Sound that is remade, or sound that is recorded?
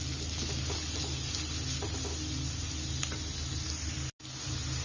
recorded